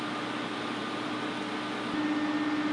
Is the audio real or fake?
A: real